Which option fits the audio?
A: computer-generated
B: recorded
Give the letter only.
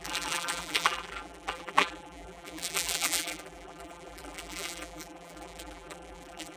A